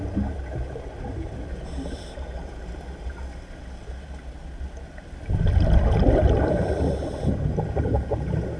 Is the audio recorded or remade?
recorded